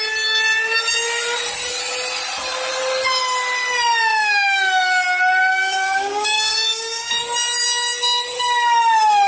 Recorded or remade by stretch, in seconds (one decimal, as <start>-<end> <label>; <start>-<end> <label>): 0.0-4.1 recorded; 4.1-4.6 remade; 4.6-5.5 recorded; 5.5-7.1 remade; 7.1-9.3 recorded